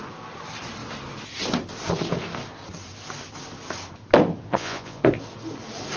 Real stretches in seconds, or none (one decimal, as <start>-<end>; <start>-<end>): 0.0-4.5; 5.0-6.0